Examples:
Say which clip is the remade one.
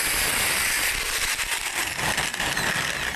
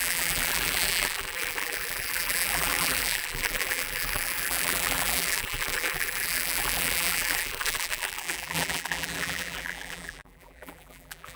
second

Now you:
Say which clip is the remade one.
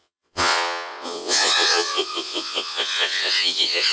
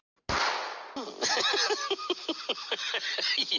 first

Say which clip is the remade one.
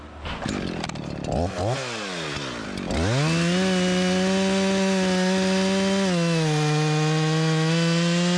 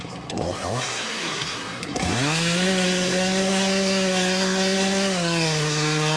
second